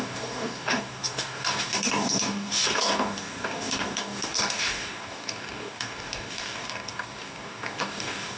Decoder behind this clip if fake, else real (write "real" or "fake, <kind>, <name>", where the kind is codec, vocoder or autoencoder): fake, codec, DAC